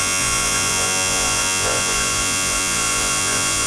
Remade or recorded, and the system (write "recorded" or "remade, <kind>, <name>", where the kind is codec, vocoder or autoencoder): remade, vocoder, Vocos